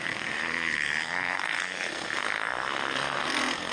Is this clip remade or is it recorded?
remade